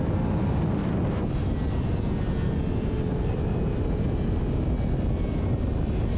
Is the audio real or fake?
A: real